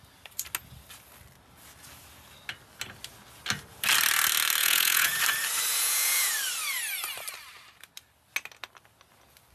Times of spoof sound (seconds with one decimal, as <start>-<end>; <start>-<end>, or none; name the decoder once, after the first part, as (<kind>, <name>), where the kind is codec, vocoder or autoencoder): 4.6-5.2 (vocoder, Vocos); 5.7-6.3